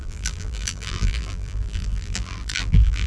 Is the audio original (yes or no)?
no